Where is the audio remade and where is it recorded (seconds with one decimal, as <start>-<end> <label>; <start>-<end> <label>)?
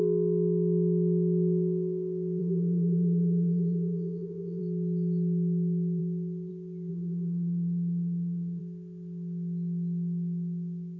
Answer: 0.0-2.4 recorded; 2.4-4.6 remade; 4.6-6.9 recorded; 6.9-8.6 remade; 8.6-11.0 recorded